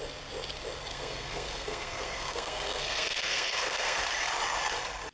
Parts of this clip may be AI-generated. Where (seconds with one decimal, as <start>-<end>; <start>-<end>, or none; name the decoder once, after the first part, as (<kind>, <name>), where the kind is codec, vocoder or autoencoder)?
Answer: 0.9-4.0 (codec, SNAC)